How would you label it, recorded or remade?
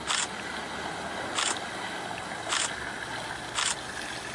recorded